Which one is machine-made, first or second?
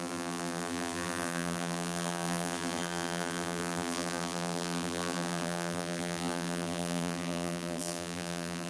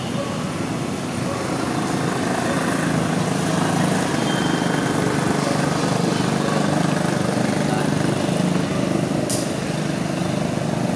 first